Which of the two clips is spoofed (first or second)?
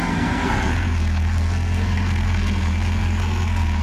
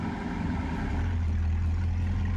first